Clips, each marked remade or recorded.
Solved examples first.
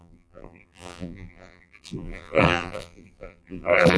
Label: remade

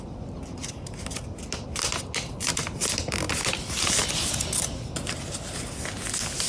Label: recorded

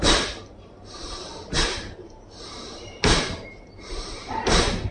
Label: remade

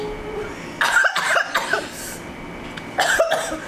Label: recorded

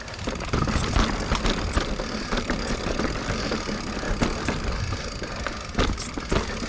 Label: recorded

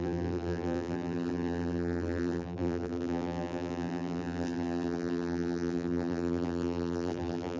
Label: remade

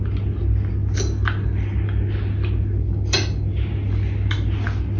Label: recorded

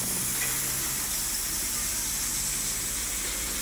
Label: recorded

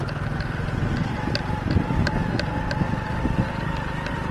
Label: recorded